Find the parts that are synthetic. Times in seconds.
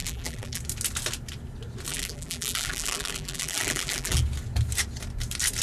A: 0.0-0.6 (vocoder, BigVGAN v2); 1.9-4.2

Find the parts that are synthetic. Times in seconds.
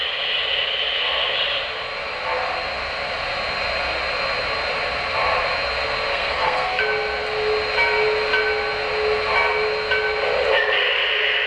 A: 6.1-6.8 (codec, SNAC)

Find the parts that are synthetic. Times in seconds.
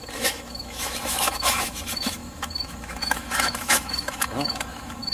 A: 0.0-5.1 (autoencoder, DAC-VAE)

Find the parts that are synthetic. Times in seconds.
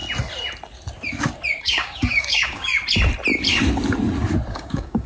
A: 1.6-2.7 (codec, DAC); 4.5-5.1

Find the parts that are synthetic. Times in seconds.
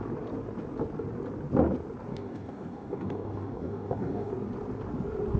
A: 2.1-4.3 (codec, DAC)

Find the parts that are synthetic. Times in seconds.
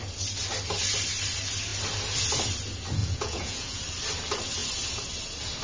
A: 3.0-3.8 (vocoder, Vocos)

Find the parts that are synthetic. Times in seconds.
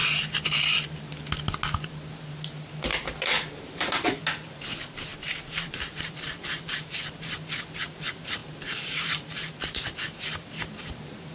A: 2.9-4.2 (vocoder, BigVGAN v2); 5.1-6.9; 8.4-9.9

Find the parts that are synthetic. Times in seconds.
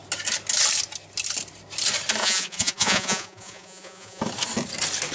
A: 2.2-4.2 (vocoder, Vocos)